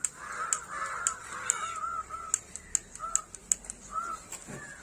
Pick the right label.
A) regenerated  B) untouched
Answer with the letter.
B